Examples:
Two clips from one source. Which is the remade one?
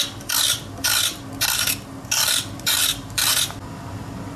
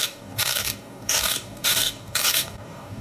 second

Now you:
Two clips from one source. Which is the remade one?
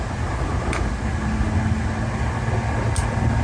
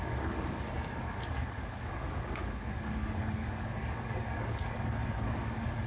second